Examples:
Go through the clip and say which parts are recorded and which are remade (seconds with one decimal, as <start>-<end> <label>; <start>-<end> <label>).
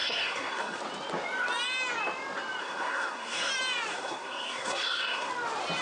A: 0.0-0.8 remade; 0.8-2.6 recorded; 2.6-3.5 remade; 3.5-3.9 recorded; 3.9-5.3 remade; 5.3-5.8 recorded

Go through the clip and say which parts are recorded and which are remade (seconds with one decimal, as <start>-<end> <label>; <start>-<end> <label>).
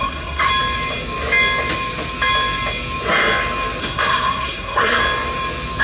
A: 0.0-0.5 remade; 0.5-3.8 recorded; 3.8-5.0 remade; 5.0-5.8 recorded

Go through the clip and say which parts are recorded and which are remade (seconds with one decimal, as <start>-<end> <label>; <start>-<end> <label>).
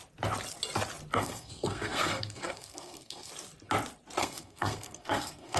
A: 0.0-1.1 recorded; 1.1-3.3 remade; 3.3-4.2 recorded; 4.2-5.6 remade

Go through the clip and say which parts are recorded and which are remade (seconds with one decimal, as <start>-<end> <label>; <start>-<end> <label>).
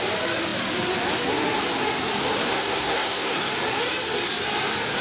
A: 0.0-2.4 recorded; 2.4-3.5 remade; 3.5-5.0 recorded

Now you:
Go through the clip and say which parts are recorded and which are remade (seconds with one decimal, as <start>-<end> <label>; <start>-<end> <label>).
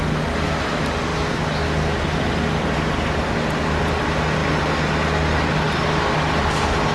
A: 0.0-6.9 recorded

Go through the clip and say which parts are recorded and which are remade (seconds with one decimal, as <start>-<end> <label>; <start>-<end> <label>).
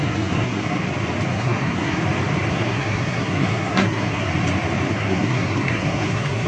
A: 0.0-0.8 remade; 0.8-1.3 recorded; 1.3-2.0 remade; 2.0-2.5 recorded; 2.5-4.3 remade; 4.3-4.9 recorded; 4.9-6.5 remade